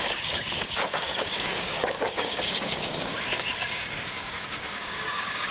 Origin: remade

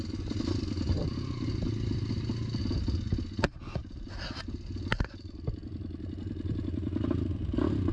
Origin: recorded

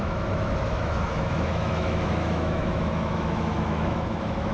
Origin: remade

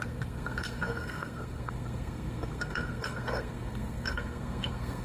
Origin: remade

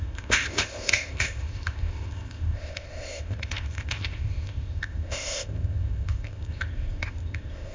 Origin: remade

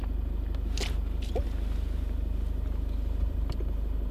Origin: recorded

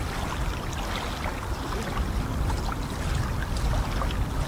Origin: recorded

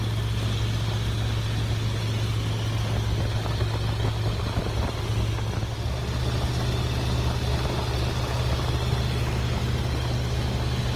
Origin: recorded